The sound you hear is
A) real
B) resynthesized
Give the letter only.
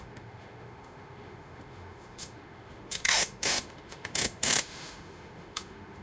B